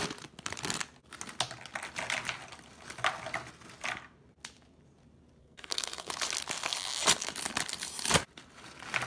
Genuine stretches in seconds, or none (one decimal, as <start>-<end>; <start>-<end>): 0.0-5.4; 6.1-9.1